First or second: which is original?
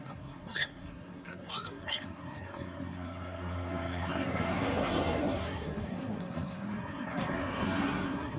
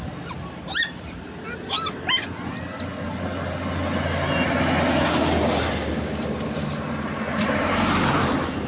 second